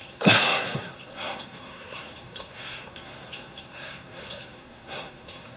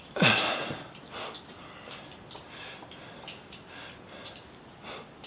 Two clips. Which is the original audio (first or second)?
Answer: second